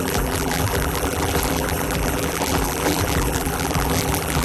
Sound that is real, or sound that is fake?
fake